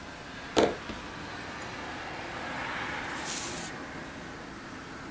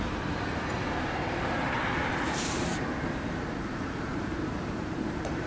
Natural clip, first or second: first